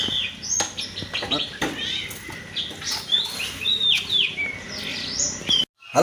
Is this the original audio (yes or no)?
yes